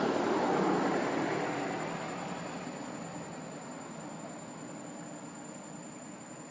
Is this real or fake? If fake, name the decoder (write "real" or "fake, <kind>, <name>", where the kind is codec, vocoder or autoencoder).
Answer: real